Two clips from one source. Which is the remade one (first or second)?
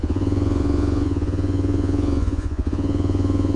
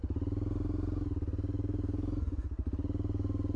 first